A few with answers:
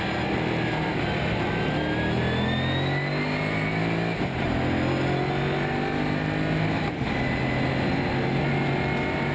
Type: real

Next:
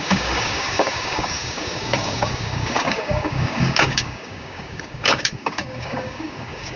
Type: fake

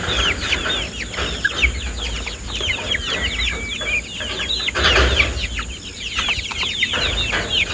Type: real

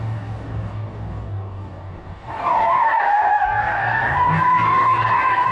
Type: fake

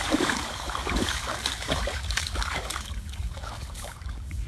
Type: fake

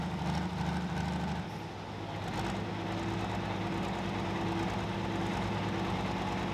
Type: real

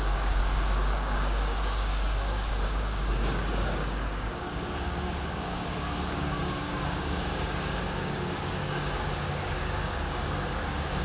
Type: fake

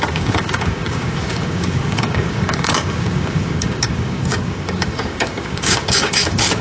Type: fake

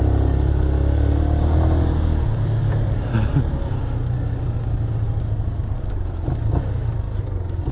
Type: real